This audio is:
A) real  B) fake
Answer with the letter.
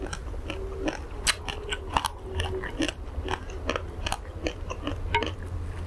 A